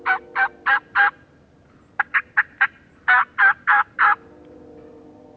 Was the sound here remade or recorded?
recorded